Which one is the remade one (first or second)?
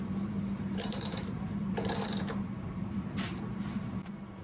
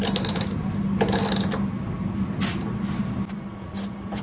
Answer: first